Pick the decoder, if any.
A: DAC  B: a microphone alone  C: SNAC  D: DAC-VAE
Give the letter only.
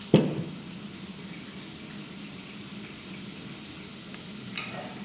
B